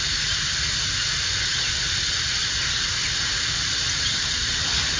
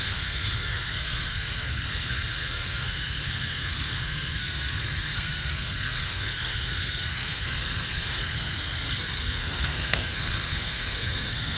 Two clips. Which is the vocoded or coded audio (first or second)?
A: second